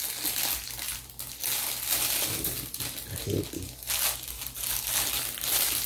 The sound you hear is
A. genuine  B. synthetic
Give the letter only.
A